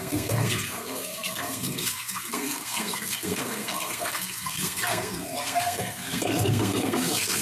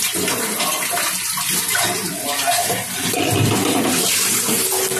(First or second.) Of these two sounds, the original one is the second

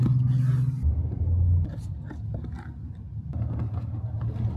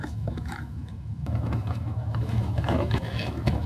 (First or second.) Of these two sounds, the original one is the first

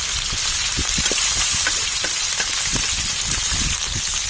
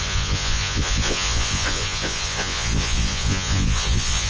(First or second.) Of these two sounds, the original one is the first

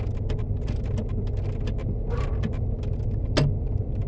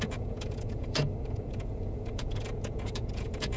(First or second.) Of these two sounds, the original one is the first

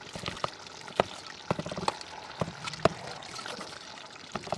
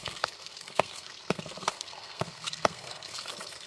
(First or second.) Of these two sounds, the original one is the first